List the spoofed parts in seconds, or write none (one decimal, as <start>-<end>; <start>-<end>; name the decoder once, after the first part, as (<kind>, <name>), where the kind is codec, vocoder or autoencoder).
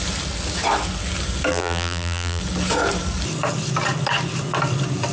1.5-2.4 (vocoder, BigVGAN v2)